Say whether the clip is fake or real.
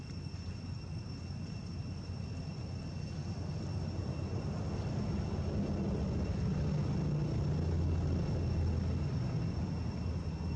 real